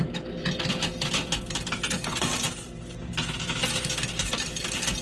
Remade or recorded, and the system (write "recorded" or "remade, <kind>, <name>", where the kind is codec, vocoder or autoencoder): recorded